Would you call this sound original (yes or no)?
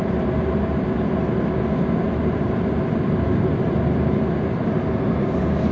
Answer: yes